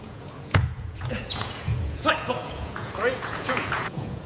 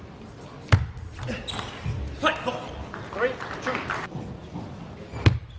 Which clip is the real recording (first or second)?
second